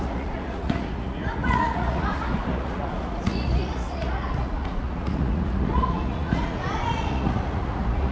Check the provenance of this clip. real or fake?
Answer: fake